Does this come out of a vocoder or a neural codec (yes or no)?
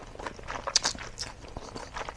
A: no